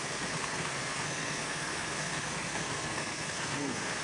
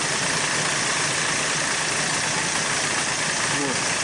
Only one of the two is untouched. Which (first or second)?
second